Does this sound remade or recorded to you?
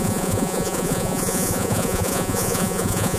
remade